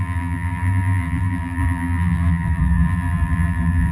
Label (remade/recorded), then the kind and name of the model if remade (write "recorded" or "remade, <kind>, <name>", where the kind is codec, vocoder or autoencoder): remade, vocoder, BigVGAN v2